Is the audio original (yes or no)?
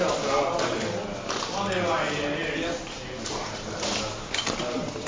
yes